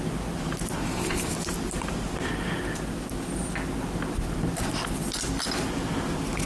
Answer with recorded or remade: recorded